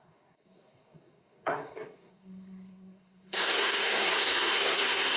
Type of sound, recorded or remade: remade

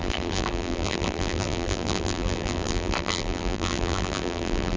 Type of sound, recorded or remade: remade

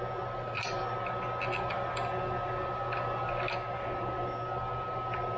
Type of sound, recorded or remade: recorded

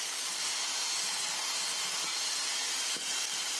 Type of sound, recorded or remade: recorded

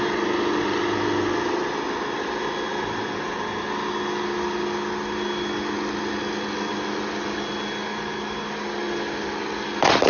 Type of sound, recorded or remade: recorded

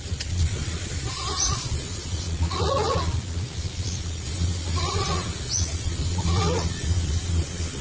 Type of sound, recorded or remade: remade